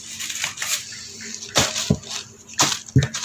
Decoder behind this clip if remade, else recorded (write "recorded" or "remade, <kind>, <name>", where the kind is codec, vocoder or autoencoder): recorded